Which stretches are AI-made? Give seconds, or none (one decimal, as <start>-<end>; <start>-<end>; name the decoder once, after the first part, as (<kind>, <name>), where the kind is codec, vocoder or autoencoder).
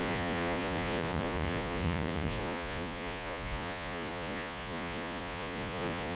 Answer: 0.0-6.1 (vocoder, Vocos)